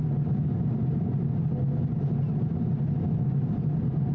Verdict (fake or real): real